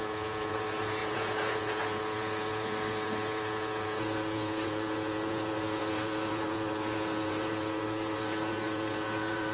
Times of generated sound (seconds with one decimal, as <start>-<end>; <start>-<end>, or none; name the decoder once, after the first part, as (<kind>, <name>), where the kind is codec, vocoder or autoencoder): 0.0-9.5 (vocoder, Vocos)